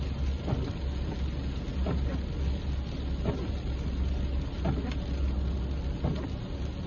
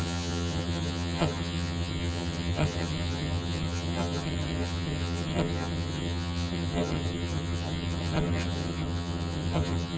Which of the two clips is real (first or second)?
first